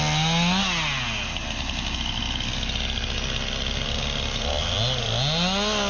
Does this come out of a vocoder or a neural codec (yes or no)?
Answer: no